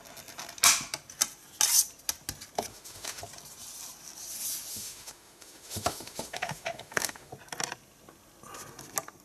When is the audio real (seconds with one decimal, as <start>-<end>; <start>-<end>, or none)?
0.0-2.7; 3.2-4.7; 7.3-9.2